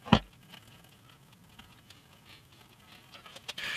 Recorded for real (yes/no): yes